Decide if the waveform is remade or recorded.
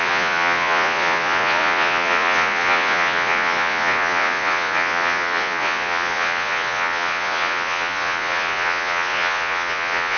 remade